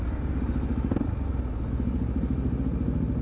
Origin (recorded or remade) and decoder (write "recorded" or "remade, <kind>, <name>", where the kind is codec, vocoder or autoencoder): recorded